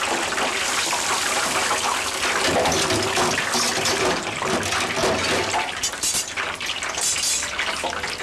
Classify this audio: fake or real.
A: real